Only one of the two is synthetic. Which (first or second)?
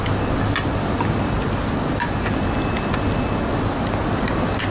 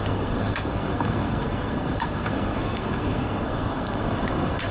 second